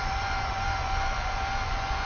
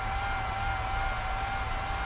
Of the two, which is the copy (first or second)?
first